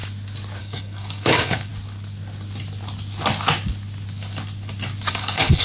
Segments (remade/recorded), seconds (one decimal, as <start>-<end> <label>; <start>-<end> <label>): 0.0-0.6 recorded; 0.6-1.7 remade; 1.7-5.1 recorded; 5.1-5.6 remade

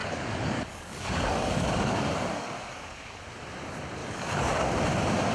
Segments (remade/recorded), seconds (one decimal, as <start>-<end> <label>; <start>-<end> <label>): 0.0-3.2 remade; 3.2-4.0 recorded; 4.0-4.7 remade; 4.7-5.3 recorded

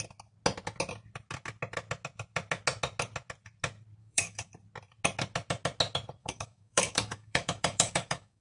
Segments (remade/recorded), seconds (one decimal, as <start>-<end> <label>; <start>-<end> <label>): 0.0-4.0 recorded; 4.0-4.5 remade; 4.5-6.2 recorded; 6.2-8.4 remade

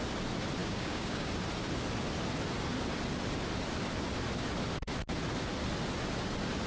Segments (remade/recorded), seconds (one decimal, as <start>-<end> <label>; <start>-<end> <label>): 0.0-0.6 recorded; 0.6-1.3 remade; 1.3-6.7 recorded

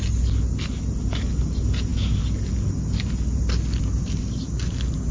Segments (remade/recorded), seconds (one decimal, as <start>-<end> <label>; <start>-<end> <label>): 0.0-5.1 recorded